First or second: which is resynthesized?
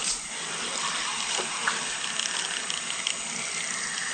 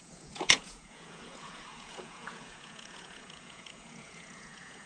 second